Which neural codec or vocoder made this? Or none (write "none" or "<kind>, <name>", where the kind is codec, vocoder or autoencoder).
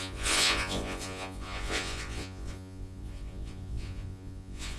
vocoder, Vocos